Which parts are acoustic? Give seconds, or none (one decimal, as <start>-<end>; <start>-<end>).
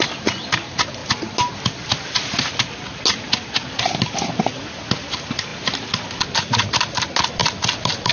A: 0.0-8.1